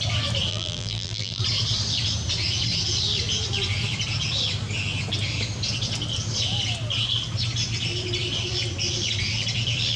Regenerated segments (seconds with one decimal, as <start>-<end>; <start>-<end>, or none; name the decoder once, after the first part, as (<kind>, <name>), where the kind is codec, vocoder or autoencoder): 0.5-1.4 (vocoder, BigVGAN v2)